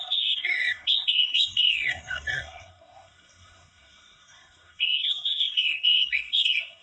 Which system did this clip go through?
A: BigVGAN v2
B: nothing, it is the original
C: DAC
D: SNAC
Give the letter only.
D